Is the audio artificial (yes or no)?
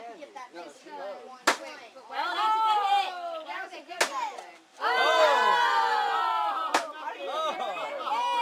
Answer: no